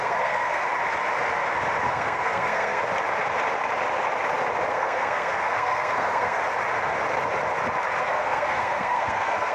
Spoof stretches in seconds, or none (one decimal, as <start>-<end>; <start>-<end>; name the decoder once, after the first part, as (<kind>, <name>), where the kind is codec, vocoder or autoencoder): 0.0-0.6 (codec, SNAC); 1.9-2.8; 4.7-6.4; 8.0-9.5